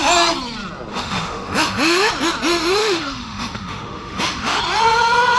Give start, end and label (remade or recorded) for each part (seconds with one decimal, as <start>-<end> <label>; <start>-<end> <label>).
0.0-0.9 recorded; 0.9-2.1 remade; 2.1-2.8 recorded; 2.8-4.6 remade; 4.6-5.4 recorded